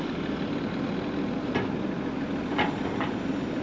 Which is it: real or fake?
real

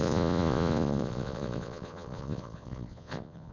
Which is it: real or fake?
fake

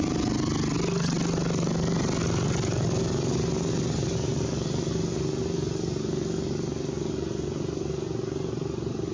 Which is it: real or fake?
real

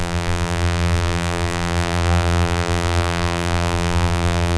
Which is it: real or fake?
fake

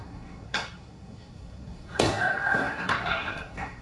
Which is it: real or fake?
fake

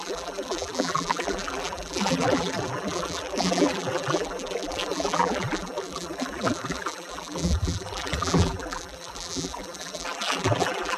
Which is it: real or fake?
fake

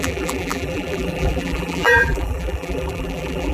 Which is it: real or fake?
fake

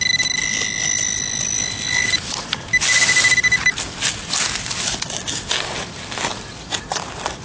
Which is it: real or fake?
real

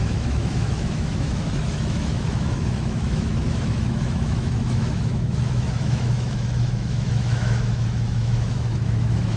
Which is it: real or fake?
fake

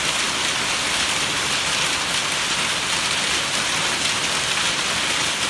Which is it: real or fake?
real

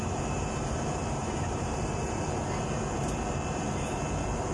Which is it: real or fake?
fake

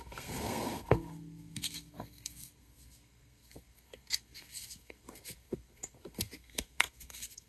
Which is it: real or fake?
fake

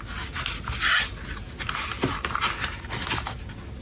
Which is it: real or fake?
real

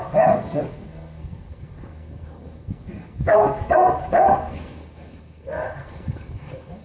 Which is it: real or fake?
fake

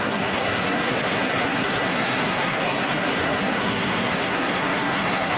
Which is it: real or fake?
fake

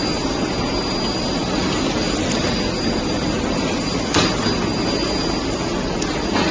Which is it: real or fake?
real